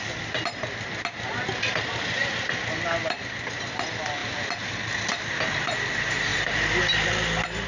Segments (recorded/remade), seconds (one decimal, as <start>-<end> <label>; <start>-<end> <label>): 0.0-7.7 recorded